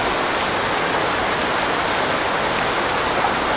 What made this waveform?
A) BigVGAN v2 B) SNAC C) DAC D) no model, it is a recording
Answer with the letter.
D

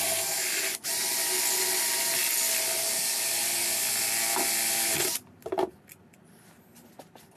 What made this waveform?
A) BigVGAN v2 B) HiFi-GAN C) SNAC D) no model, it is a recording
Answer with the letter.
D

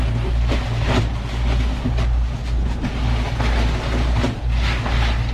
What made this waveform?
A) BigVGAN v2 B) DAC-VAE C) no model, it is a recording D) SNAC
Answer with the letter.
C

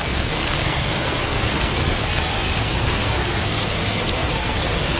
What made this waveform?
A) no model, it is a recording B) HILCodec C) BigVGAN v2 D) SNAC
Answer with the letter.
D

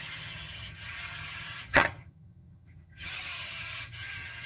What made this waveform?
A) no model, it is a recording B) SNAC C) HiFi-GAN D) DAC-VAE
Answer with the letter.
C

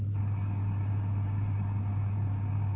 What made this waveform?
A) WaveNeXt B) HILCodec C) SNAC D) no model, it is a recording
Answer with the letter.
D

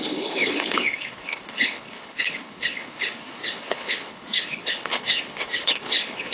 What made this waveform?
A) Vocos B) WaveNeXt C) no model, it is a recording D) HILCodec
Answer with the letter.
D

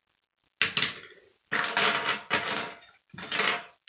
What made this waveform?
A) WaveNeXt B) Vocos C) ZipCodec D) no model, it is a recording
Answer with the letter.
D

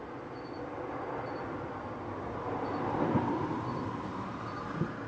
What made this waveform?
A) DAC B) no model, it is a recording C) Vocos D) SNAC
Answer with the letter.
B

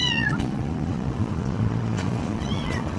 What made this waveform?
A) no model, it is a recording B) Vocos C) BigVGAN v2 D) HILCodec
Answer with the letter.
B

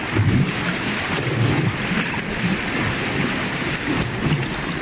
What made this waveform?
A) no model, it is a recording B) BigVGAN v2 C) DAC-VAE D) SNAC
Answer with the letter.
A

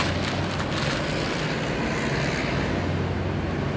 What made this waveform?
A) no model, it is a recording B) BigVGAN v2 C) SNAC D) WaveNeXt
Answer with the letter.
A